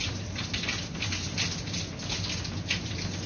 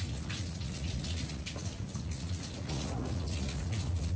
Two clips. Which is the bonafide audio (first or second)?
first